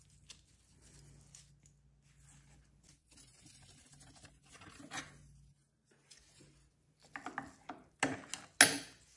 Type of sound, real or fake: real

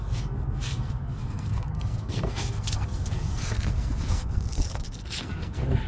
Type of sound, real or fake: fake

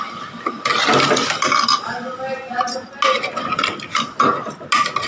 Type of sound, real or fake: real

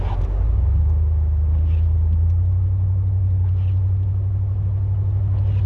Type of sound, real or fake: real